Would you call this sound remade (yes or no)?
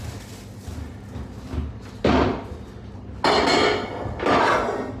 no